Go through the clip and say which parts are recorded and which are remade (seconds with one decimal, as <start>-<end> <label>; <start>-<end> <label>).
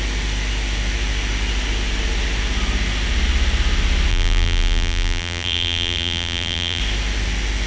0.0-4.1 recorded; 4.1-6.8 remade; 6.8-7.7 recorded